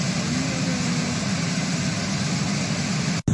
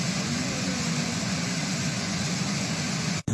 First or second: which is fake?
second